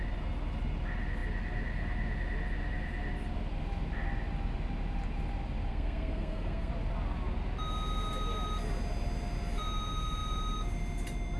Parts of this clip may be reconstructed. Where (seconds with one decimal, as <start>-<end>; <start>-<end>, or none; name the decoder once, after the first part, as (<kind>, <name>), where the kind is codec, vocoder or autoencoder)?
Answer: 5.7-6.7 (codec, SNAC)